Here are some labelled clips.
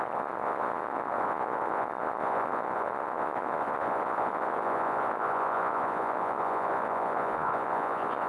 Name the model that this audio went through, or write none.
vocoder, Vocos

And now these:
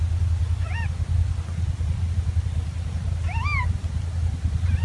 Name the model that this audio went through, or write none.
none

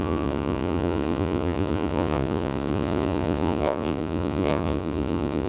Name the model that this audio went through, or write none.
vocoder, Vocos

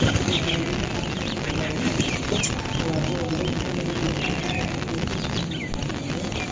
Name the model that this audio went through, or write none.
none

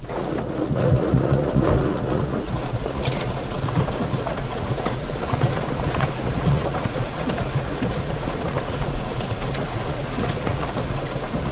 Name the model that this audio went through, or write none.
vocoder, Vocos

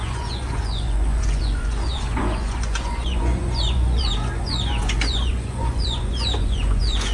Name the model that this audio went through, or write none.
vocoder, Vocos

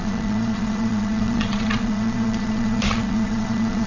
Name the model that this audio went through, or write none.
vocoder, Vocos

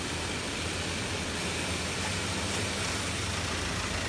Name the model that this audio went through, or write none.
none